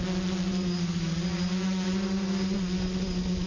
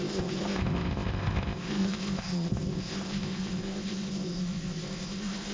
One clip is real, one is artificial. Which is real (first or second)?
first